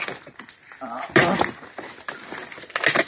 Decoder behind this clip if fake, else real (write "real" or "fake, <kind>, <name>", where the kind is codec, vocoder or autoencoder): real